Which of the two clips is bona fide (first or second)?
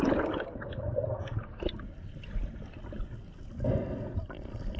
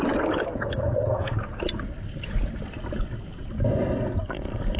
second